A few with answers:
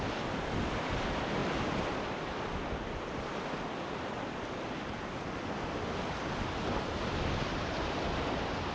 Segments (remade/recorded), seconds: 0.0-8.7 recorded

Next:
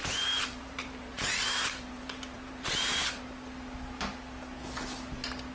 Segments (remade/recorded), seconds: 0.0-3.2 remade; 3.2-5.5 recorded

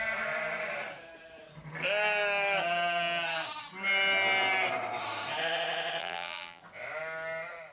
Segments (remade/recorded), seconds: 0.0-6.0 recorded; 6.0-6.6 remade; 6.6-7.7 recorded

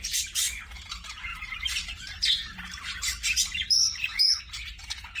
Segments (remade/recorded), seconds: 0.0-1.3 recorded; 1.3-4.4 remade; 4.4-5.2 recorded